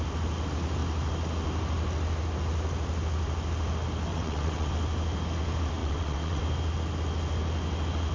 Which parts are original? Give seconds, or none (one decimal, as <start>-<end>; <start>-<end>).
0.0-4.1; 4.7-5.8; 6.4-8.1